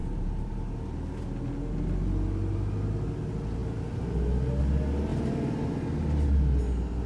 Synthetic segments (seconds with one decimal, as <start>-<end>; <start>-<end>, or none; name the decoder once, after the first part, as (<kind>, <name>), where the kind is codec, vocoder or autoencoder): 0.0-0.5 (vocoder, BigVGAN v2); 5.1-5.7